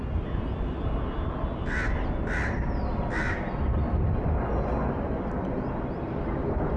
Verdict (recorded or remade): recorded